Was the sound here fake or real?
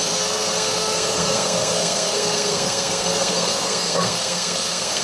fake